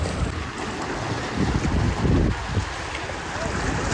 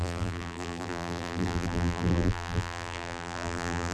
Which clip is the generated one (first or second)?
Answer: second